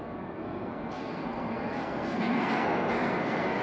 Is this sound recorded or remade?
remade